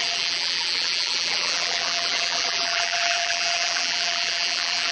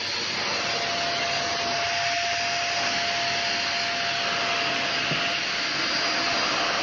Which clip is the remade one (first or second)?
first